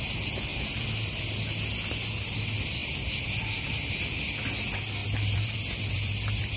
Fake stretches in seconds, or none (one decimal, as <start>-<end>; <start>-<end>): 0.5-1.4; 2.8-3.4; 5.0-6.6